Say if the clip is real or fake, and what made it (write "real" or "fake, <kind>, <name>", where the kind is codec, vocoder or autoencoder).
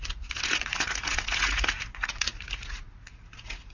fake, vocoder, Vocos